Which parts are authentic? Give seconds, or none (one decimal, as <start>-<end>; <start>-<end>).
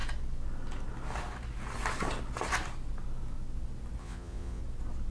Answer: 0.0-4.0; 4.6-5.1